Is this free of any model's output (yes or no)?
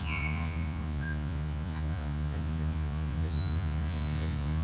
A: no